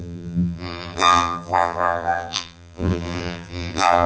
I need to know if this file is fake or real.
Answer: fake